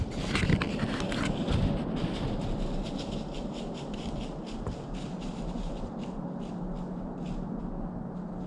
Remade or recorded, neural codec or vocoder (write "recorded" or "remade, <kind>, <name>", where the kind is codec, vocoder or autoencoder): recorded